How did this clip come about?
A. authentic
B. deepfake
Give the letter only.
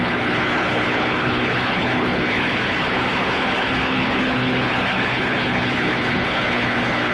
B